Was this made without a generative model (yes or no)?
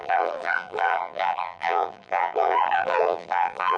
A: no